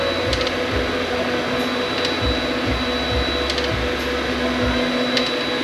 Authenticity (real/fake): real